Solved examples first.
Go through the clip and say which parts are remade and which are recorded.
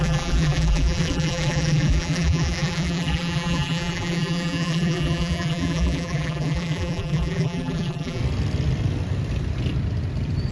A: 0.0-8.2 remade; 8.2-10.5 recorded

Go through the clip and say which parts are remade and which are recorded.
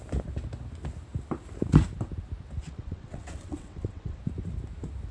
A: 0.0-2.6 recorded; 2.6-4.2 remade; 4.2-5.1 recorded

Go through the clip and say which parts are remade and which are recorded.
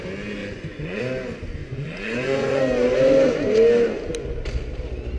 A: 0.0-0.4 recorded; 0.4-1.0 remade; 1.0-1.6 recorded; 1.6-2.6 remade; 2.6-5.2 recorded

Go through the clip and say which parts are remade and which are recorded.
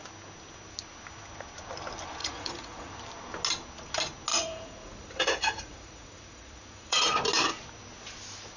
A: 0.0-2.2 recorded; 2.2-2.9 remade; 2.9-4.3 recorded; 4.3-7.2 remade; 7.2-8.6 recorded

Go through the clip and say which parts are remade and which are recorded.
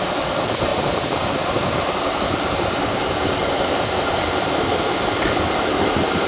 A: 0.0-6.3 recorded